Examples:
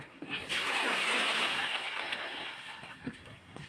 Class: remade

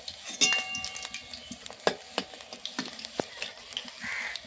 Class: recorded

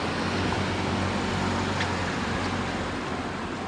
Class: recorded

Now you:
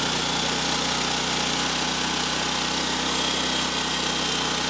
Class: recorded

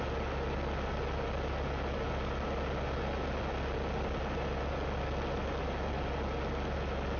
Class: recorded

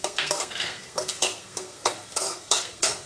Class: remade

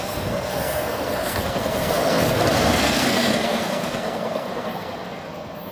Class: remade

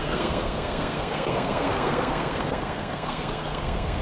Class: remade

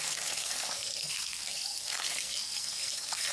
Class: remade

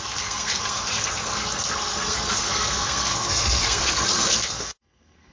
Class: remade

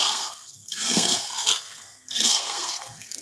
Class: remade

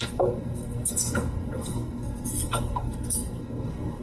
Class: remade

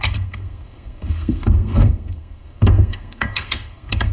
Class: remade